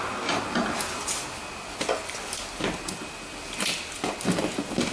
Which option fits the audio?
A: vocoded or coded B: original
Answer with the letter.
B